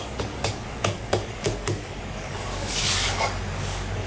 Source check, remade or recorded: remade